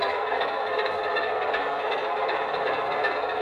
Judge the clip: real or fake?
fake